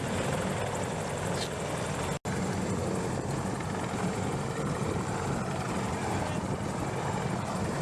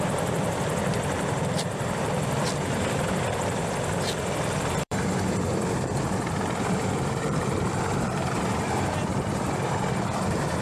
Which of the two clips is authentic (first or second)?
first